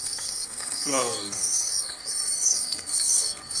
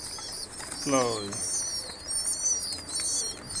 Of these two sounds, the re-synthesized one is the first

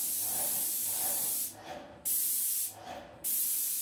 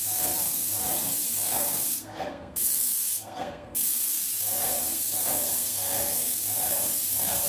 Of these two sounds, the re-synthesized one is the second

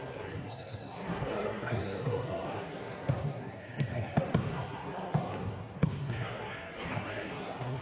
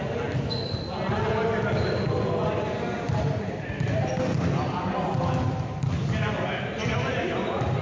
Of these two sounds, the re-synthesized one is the first